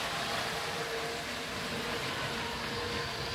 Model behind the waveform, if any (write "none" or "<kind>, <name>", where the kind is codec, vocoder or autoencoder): none